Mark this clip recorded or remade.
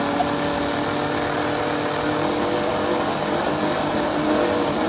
recorded